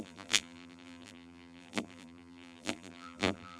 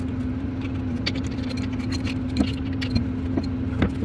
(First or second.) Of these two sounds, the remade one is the first